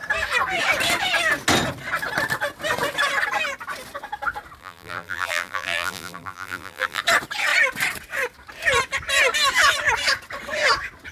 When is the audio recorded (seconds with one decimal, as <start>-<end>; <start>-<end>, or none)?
0.0-4.6; 7.0-11.1